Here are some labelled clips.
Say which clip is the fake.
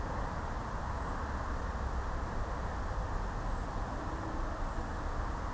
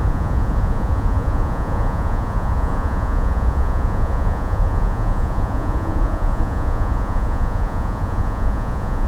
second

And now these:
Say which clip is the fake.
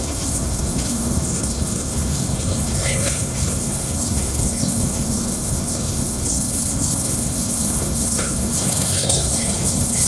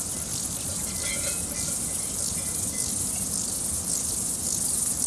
first